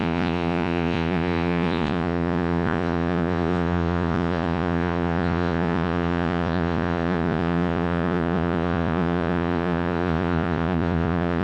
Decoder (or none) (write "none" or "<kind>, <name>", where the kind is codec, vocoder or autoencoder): vocoder, Vocos